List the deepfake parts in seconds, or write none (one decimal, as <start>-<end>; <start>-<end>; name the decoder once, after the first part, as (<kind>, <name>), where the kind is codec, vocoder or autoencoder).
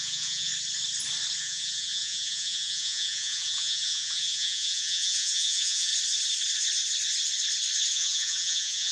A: 0.0-0.5 (vocoder, Vocos); 1.4-5.9; 7.9-8.9